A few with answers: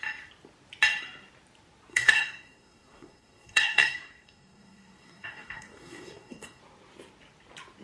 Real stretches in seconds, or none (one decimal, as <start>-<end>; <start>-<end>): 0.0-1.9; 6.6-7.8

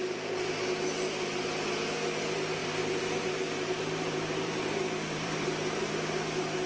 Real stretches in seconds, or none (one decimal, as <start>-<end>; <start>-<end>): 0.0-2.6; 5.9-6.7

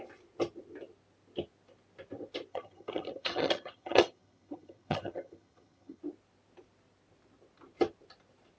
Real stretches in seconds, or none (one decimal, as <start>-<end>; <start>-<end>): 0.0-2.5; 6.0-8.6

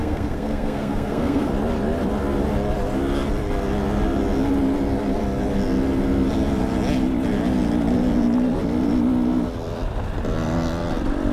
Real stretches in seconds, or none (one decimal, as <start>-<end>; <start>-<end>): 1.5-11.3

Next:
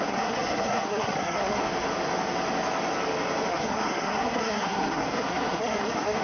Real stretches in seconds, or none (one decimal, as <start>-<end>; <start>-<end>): 1.6-3.5

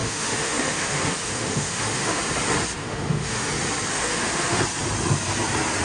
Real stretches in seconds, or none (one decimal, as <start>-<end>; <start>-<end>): 2.2-2.8; 3.5-3.9; 4.6-5.8